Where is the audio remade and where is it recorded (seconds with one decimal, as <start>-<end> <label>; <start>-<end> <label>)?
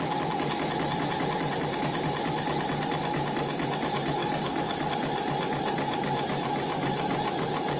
0.0-4.2 recorded; 4.2-4.9 remade; 4.9-7.8 recorded